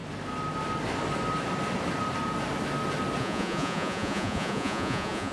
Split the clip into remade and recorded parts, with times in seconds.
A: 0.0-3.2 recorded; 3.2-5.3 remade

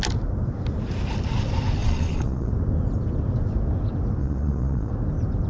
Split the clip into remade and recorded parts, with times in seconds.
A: 0.0-1.8 recorded; 1.8-2.5 remade; 2.5-4.2 recorded; 4.2-4.9 remade; 4.9-5.5 recorded

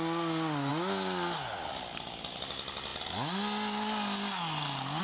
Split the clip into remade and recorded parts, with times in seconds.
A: 0.0-5.0 recorded

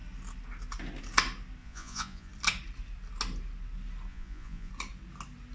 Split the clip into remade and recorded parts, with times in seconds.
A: 0.0-1.6 recorded; 1.6-2.3 remade; 2.3-4.1 recorded; 4.1-4.7 remade; 4.7-5.5 recorded

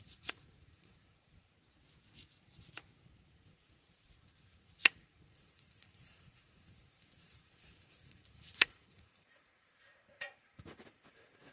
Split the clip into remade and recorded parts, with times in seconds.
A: 0.0-1.6 remade; 1.6-3.2 recorded; 3.2-11.5 remade

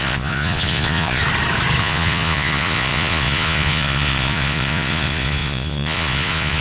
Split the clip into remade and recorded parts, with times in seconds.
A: 0.0-1.2 remade; 1.2-1.8 recorded; 1.8-6.6 remade